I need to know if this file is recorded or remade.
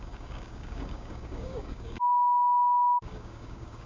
remade